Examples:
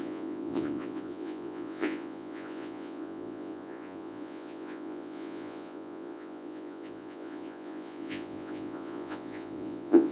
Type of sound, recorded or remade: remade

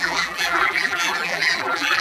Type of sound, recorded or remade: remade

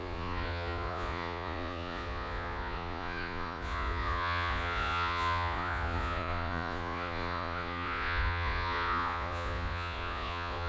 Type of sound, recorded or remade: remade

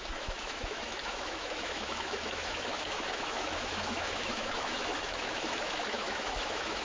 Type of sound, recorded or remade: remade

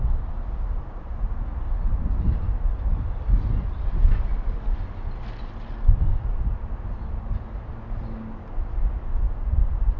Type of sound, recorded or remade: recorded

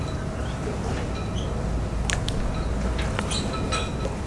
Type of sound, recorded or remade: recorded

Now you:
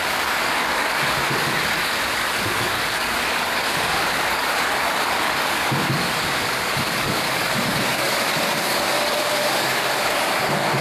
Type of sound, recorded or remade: remade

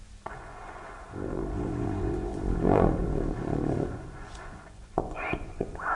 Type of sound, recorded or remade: remade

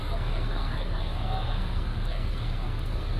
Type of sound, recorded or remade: remade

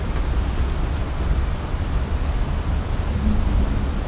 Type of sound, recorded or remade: recorded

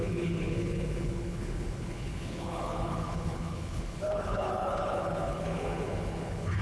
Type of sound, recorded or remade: remade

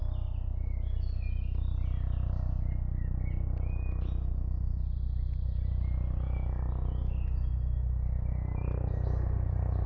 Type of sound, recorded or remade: recorded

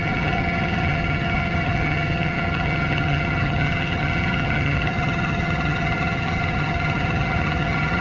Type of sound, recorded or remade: remade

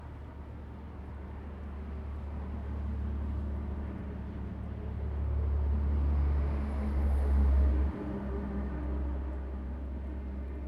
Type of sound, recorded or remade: recorded